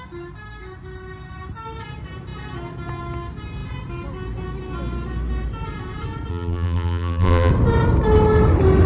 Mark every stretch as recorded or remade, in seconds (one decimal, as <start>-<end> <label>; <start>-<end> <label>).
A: 0.0-6.3 recorded; 6.3-7.5 remade; 7.5-8.9 recorded